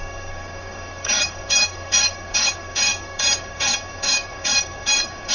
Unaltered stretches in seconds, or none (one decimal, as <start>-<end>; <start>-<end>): none